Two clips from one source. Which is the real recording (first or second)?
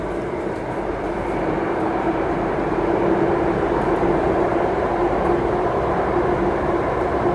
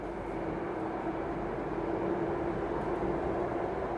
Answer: second